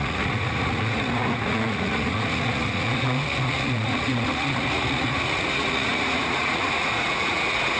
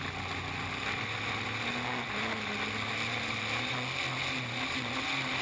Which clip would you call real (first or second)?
second